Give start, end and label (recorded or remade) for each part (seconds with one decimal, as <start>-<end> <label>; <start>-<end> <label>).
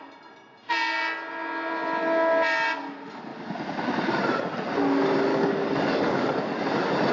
0.0-5.3 recorded; 5.3-6.6 remade; 6.6-7.1 recorded